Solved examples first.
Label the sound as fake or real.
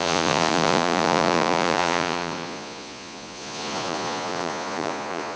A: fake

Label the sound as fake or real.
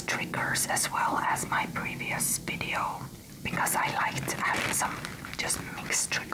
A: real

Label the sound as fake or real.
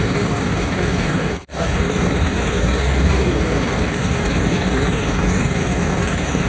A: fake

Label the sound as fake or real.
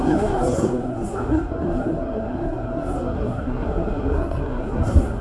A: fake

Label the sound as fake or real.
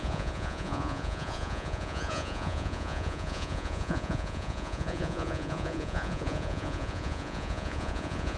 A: fake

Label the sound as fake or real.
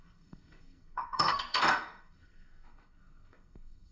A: fake